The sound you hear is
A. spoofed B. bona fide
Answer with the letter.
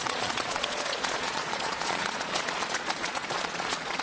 A